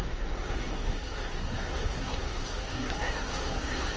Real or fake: fake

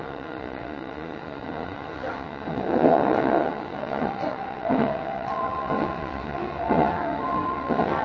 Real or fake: fake